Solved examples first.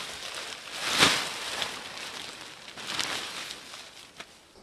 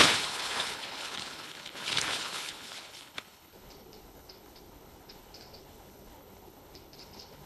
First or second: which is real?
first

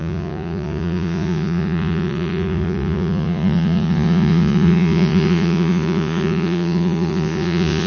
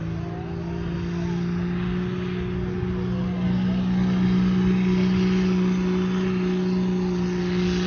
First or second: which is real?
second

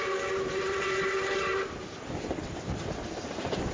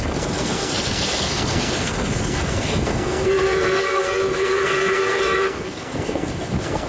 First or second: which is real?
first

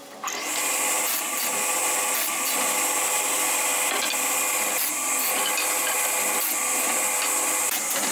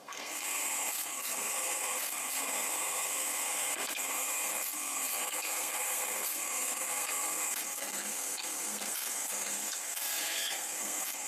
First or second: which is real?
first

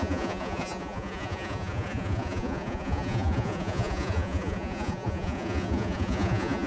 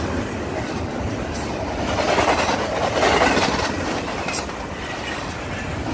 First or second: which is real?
second